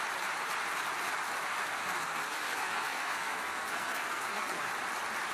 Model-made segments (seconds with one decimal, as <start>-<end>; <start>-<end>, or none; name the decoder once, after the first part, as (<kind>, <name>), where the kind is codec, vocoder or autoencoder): 1.8-4.7 (codec, SNAC)